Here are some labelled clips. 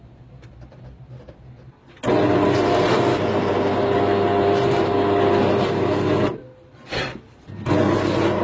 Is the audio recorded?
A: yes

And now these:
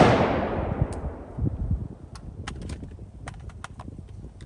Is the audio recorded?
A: yes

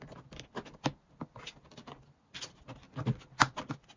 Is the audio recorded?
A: yes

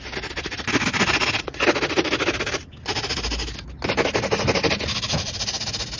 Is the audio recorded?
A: yes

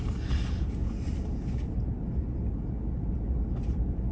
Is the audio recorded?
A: yes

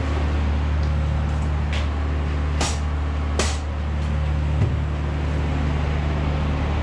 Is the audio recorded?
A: yes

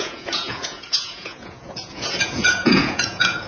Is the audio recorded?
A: no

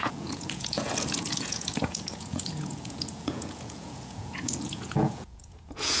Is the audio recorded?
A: no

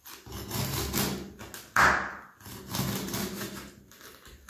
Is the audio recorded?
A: yes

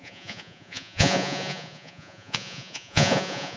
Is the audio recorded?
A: no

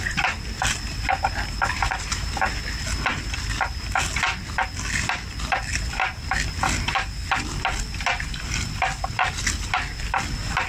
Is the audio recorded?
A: yes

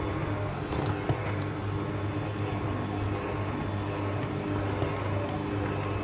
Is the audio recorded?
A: yes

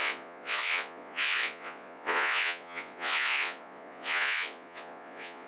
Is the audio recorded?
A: no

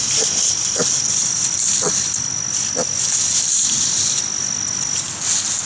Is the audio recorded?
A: yes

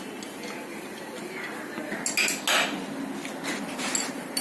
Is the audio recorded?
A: yes